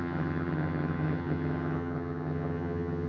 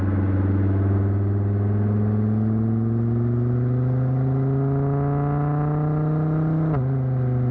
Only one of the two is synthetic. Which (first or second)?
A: first